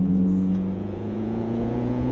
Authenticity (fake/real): fake